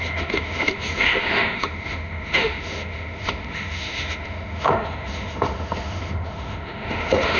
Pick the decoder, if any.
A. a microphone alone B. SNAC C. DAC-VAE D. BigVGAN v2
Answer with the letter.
C